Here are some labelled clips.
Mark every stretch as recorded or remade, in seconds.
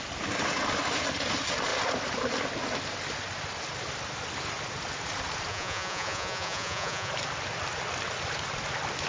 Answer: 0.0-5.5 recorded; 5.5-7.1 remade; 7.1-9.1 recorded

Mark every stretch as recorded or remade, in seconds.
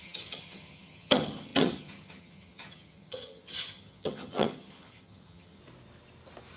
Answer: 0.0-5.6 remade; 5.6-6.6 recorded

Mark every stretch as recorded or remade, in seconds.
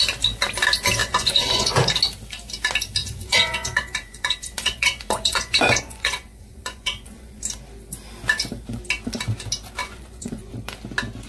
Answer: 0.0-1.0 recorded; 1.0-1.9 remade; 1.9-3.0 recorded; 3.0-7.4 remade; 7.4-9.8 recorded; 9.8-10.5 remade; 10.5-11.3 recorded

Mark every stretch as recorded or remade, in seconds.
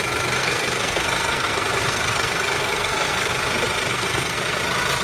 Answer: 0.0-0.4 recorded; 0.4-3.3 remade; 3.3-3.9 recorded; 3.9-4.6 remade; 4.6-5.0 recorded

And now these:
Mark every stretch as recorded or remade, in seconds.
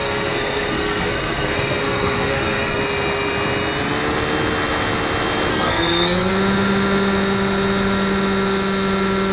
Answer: 0.0-2.8 remade; 2.8-5.5 recorded; 5.5-6.3 remade; 6.3-9.3 recorded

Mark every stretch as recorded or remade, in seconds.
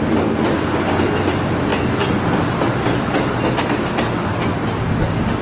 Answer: 0.0-5.4 recorded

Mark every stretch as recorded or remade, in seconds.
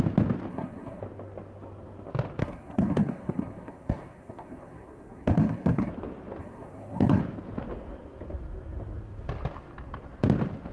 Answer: 0.0-0.5 recorded; 0.5-1.0 remade; 1.0-2.4 recorded; 2.4-5.9 remade; 5.9-6.4 recorded; 6.4-7.2 remade; 7.2-10.7 recorded